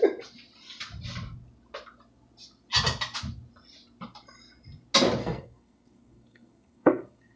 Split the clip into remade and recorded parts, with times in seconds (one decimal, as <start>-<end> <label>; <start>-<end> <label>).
0.0-5.2 recorded; 5.2-7.4 remade